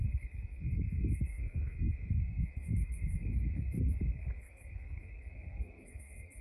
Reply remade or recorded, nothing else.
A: remade